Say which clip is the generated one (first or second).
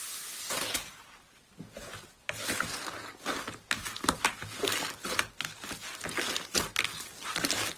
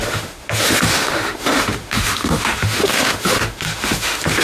second